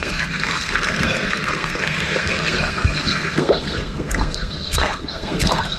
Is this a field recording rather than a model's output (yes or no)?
no